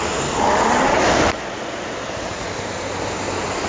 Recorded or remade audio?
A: recorded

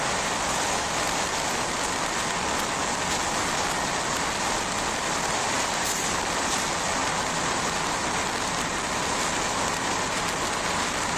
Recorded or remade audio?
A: recorded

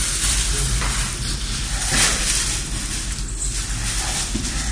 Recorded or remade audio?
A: recorded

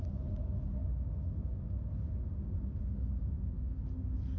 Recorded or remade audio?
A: recorded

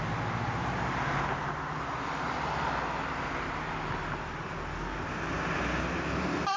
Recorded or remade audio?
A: recorded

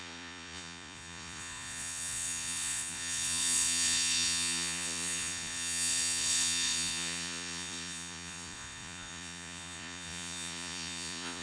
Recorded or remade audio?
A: remade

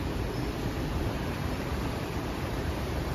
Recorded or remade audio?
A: remade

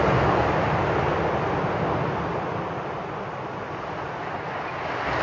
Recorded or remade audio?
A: recorded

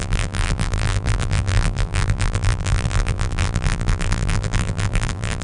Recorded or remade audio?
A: remade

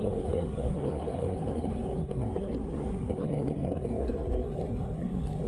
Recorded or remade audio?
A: remade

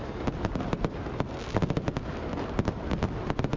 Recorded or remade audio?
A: recorded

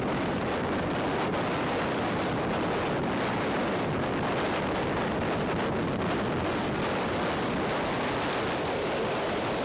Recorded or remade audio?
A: recorded